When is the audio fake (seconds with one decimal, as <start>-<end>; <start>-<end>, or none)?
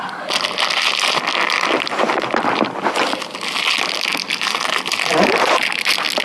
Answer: none